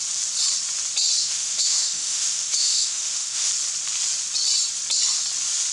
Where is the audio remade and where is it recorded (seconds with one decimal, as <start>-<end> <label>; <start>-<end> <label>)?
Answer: 0.0-1.2 recorded; 1.2-3.5 remade; 3.5-5.7 recorded